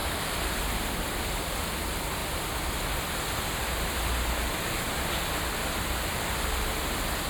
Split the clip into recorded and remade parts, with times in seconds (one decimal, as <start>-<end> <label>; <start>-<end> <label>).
0.0-0.6 remade; 0.6-7.3 recorded